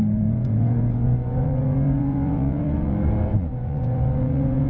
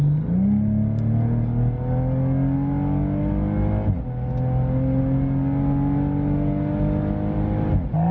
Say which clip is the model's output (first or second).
first